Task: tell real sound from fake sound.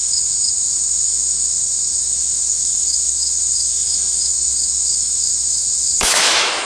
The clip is fake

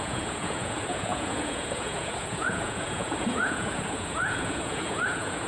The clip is fake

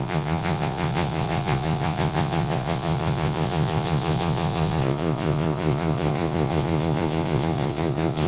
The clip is fake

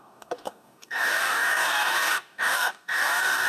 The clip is fake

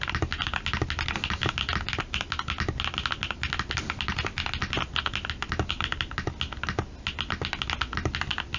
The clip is real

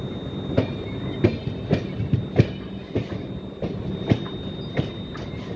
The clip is real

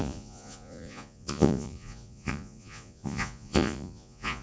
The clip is fake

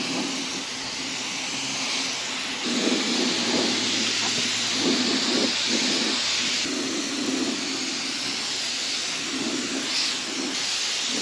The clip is real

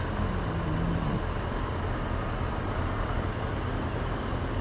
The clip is real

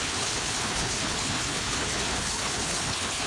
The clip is fake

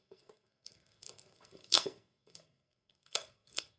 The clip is fake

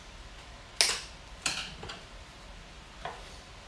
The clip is real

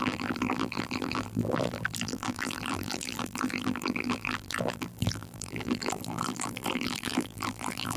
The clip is fake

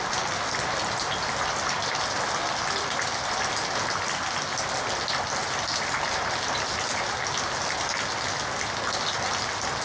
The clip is real